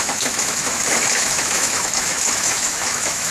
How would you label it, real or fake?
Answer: fake